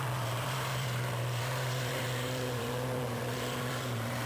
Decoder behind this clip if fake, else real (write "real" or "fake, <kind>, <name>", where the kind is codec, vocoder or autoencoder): fake, vocoder, BigVGAN v2